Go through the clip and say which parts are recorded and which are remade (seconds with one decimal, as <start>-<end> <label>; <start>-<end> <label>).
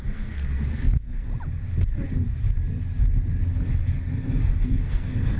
0.0-1.3 remade; 1.3-4.5 recorded; 4.5-5.4 remade